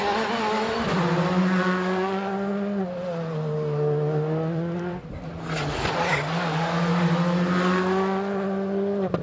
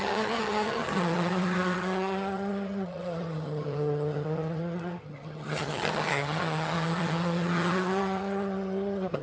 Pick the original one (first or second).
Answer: first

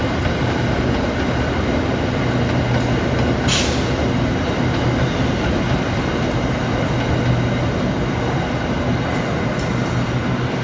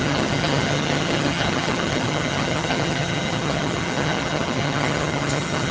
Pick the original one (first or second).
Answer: first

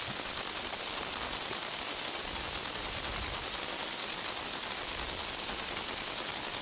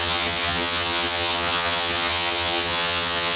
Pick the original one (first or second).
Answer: first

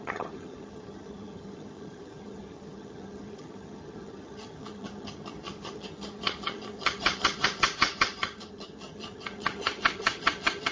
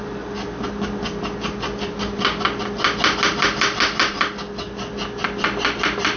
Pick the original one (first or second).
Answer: second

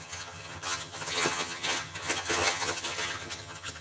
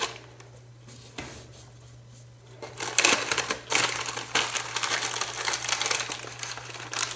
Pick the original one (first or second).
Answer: second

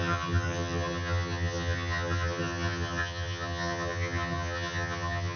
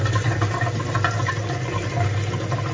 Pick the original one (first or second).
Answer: second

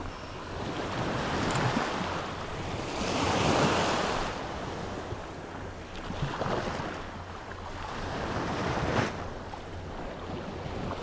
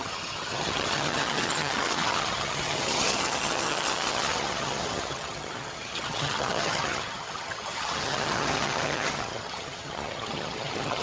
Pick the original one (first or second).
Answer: first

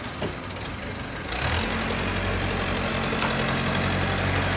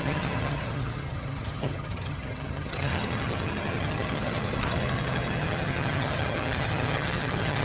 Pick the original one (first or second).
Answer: first